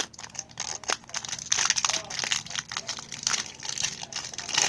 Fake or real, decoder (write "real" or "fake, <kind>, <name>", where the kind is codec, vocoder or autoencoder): real